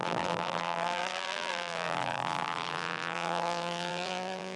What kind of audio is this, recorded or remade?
remade